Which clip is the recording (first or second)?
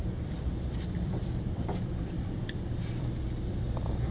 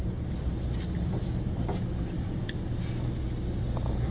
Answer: second